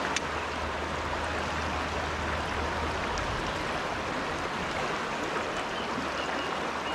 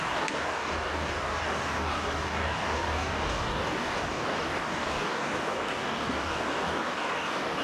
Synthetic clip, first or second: second